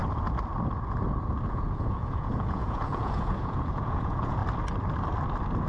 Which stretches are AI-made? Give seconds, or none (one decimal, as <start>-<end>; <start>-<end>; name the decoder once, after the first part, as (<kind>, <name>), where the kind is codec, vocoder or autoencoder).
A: 1.5-4.4 (vocoder, Vocos)